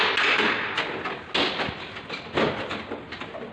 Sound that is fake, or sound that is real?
real